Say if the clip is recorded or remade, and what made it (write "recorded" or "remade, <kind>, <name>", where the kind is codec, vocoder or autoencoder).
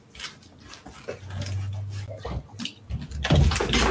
recorded